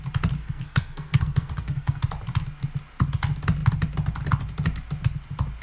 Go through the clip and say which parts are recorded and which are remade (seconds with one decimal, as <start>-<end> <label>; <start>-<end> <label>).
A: 0.0-0.4 recorded; 0.4-2.0 remade; 2.0-5.6 recorded